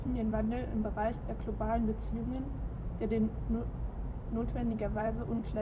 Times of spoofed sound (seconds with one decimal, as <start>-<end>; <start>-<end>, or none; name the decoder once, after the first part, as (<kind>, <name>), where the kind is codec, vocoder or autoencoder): 0.0-0.7 (vocoder, BigVGAN v2); 3.9-5.6